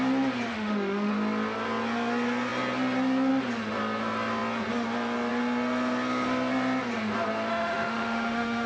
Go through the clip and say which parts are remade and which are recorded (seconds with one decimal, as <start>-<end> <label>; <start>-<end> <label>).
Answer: 0.0-0.5 recorded; 0.5-1.1 remade; 1.1-7.5 recorded; 7.5-8.7 remade